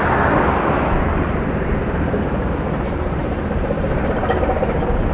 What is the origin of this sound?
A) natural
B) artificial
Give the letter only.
A